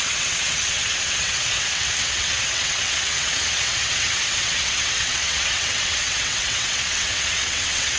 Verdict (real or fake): fake